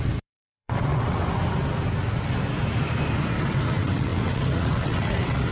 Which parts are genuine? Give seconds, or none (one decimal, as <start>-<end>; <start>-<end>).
1.2-3.4